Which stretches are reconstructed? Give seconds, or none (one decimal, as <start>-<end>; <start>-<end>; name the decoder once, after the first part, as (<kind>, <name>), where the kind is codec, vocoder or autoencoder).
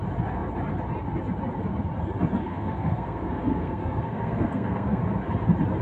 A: 2.4-5.0 (codec, SNAC)